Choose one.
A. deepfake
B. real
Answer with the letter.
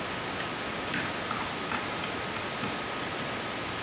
B